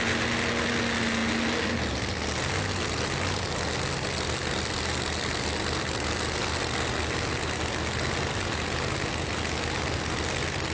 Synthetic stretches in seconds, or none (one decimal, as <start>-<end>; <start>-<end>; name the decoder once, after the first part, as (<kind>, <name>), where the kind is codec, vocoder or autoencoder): none